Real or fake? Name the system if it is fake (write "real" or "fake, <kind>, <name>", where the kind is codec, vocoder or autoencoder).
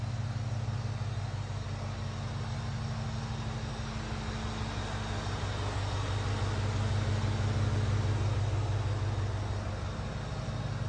real